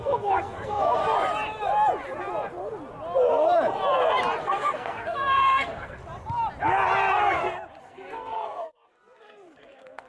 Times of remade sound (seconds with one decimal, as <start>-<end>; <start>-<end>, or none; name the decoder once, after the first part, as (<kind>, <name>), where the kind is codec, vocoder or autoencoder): 0.0-1.0 (codec, SNAC); 4.4-6.0; 7.8-10.1